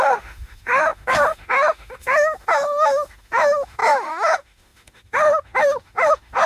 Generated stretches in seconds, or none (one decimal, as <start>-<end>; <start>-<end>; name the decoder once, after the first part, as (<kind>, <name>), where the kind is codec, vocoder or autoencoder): 0.0-6.5 (autoencoder, DAC-VAE)